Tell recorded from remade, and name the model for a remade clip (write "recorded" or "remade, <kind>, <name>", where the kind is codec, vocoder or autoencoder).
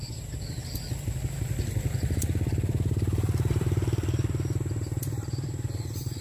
remade, vocoder, BigVGAN v2